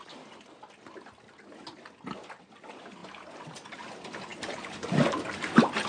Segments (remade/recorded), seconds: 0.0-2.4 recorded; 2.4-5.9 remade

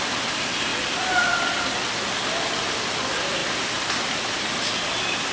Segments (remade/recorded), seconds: 0.0-0.7 remade; 0.7-3.0 recorded; 3.0-5.3 remade